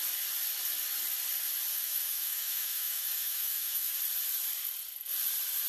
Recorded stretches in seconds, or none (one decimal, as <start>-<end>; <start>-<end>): 0.0-1.7; 3.9-5.7